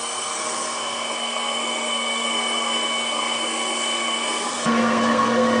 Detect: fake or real fake